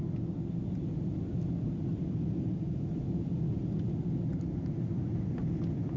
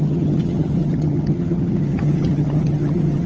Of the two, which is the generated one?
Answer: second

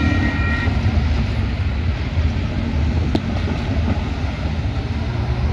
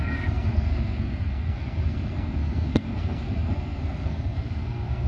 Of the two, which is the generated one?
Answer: second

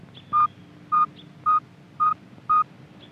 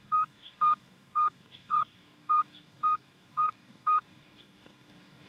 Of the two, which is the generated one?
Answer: second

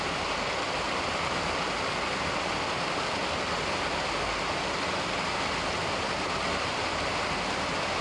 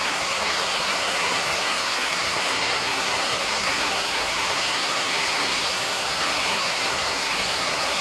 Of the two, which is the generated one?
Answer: second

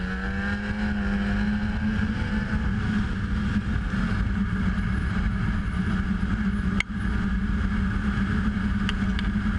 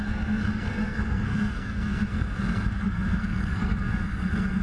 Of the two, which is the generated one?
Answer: second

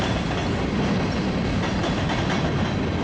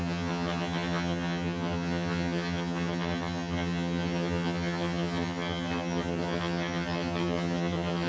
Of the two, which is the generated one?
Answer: second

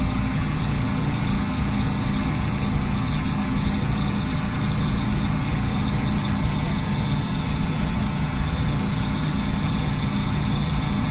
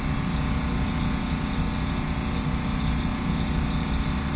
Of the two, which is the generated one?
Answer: first